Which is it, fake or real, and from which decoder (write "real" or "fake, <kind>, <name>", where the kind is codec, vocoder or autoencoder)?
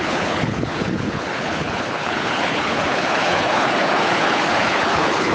fake, codec, HILCodec